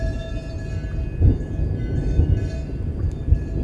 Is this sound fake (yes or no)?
no